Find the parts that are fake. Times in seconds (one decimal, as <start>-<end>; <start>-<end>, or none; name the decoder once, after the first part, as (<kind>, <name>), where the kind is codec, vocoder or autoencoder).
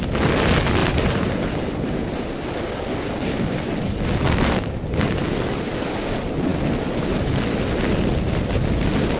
0.8-2.2 (vocoder, BigVGAN v2)